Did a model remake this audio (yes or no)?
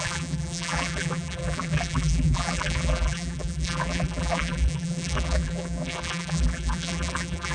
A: yes